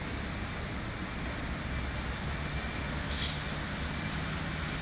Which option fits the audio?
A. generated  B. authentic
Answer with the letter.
B